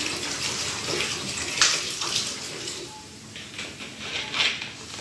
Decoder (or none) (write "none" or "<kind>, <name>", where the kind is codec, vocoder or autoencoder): none